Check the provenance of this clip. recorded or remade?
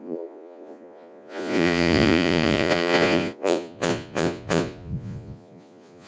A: remade